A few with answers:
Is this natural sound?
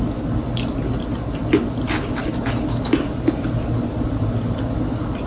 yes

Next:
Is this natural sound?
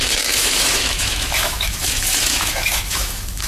no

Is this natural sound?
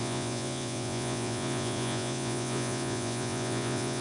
no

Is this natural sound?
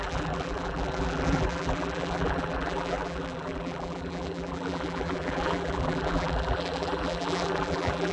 no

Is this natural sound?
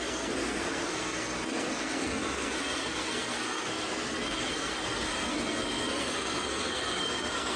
no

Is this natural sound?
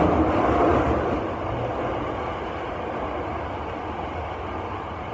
yes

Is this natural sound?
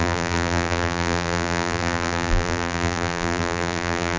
no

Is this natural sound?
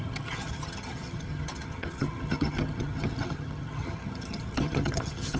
no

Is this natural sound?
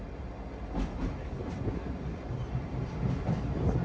yes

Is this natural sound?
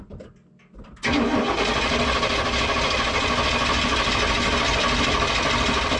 yes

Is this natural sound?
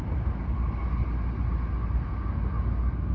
yes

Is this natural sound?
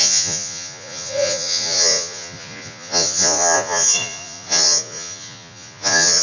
no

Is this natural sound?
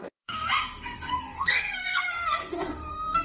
no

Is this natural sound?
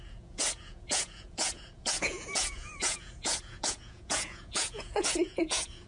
no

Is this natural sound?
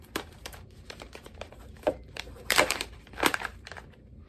no